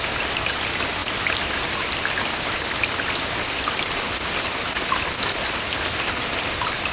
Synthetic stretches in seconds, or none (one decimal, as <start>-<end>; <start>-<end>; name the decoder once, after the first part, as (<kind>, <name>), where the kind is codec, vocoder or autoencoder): none